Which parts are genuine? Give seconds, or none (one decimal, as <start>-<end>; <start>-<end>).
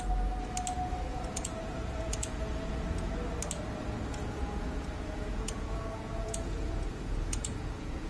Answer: 0.0-1.1; 3.2-4.1